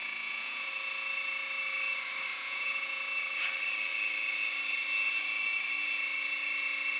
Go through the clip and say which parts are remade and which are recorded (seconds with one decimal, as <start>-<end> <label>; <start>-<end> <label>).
0.0-0.7 remade; 0.7-2.3 recorded; 2.3-3.0 remade; 3.0-7.0 recorded